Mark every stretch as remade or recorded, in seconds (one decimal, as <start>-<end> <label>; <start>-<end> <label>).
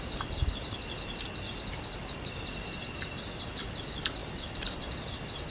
0.0-5.5 recorded